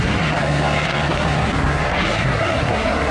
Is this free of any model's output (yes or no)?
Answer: no